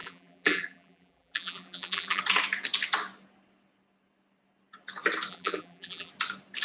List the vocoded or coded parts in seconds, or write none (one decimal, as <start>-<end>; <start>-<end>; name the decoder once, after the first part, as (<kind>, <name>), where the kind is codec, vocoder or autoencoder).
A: 0.0-2.2 (vocoder, BigVGAN v2); 5.3-6.1